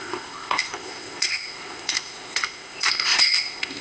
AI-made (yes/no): yes